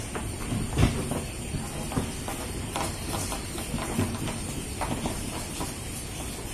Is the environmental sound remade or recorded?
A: recorded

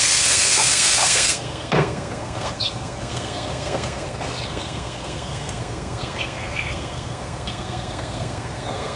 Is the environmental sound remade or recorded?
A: remade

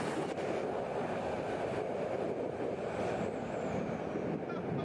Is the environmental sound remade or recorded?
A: recorded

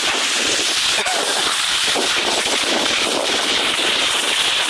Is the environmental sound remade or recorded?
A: recorded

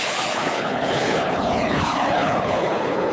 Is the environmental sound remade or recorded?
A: remade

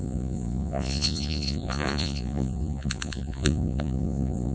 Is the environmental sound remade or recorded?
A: remade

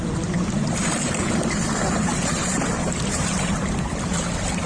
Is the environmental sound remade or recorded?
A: remade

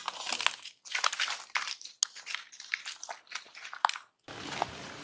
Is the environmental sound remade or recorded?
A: recorded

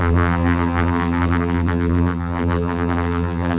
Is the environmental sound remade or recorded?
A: remade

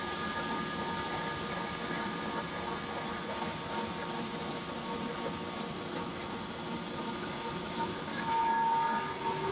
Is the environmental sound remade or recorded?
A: recorded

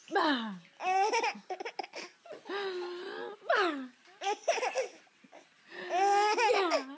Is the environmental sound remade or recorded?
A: recorded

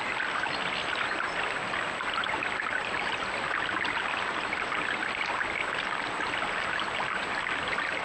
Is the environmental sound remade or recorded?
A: recorded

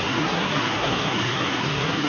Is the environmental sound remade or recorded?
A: remade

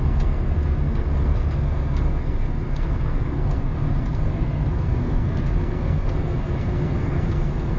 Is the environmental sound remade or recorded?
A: remade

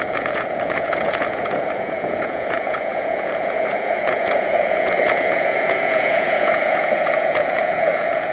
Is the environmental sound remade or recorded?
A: remade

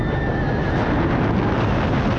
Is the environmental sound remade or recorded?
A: recorded